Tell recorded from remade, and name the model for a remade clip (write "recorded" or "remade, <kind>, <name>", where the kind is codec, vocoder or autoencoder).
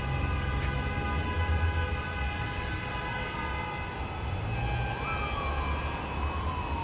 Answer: recorded